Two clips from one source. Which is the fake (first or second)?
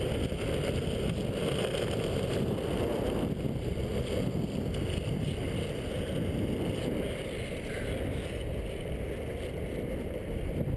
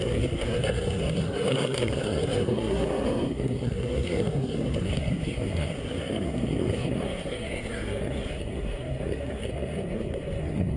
second